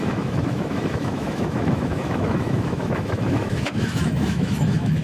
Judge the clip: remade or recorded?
remade